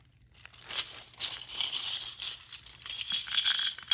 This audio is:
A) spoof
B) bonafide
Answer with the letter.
B